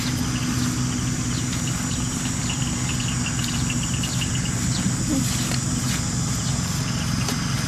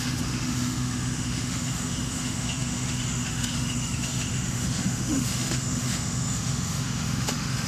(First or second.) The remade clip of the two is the second